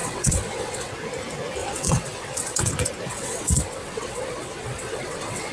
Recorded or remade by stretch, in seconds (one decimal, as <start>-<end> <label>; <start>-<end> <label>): 0.0-0.9 remade; 0.9-1.6 recorded; 1.6-2.7 remade; 2.7-3.1 recorded; 3.1-5.5 remade